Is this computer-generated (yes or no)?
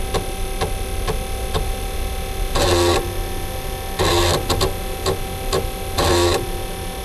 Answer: no